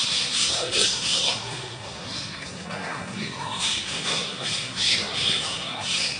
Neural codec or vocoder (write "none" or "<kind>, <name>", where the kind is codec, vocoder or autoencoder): codec, SNAC